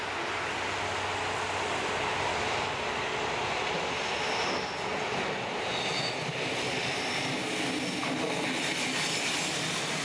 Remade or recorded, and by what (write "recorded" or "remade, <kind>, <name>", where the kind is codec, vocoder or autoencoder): recorded